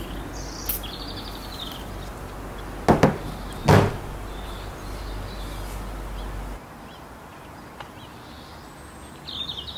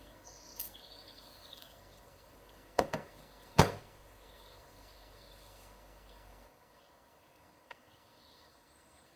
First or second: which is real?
first